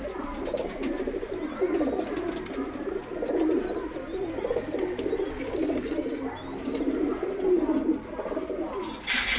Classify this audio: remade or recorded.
recorded